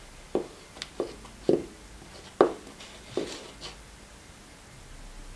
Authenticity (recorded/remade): recorded